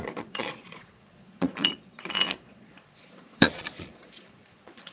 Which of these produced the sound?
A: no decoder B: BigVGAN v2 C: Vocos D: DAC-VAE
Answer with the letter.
C